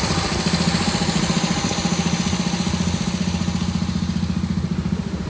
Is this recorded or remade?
recorded